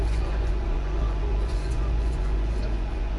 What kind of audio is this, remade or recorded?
remade